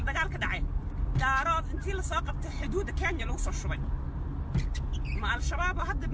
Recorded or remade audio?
recorded